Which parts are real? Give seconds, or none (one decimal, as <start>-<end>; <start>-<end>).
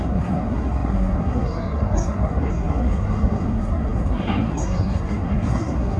none